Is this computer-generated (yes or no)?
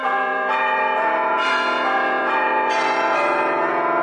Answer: yes